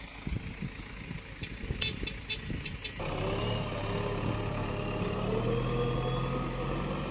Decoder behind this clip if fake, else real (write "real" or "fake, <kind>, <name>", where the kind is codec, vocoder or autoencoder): real